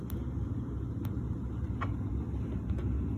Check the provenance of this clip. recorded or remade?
recorded